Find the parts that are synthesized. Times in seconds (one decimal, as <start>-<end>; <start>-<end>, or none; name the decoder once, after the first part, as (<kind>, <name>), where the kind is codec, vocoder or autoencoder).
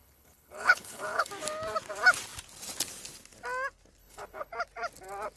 0.0-1.3 (codec, HILCodec); 4.0-4.5